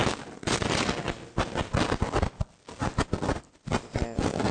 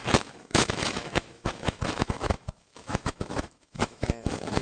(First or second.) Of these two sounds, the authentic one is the first